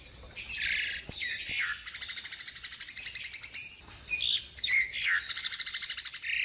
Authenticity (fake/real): real